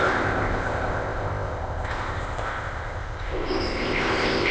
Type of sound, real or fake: fake